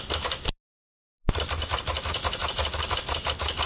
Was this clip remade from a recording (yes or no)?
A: no